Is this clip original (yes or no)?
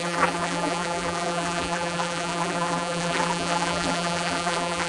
no